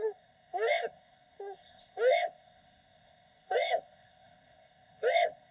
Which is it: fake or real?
fake